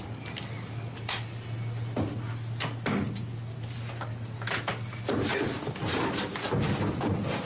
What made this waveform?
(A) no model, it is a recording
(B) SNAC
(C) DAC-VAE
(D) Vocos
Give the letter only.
A